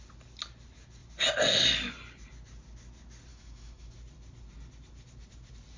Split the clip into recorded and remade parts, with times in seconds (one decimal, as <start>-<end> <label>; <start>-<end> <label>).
0.0-3.3 recorded; 3.3-3.9 remade; 3.9-5.8 recorded